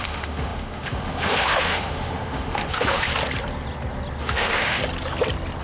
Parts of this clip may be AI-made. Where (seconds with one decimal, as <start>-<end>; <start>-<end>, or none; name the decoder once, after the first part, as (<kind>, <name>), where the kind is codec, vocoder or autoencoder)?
0.0-3.1 (autoencoder, DAC-VAE); 4.2-4.8